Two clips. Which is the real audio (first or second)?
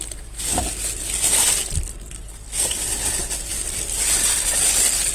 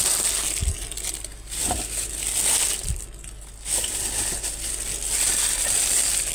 second